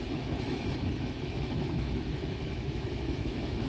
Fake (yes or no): yes